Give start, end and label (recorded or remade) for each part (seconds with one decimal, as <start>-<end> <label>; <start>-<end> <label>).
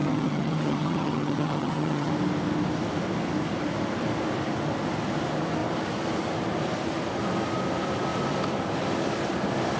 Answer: 0.0-2.1 remade; 2.1-9.8 recorded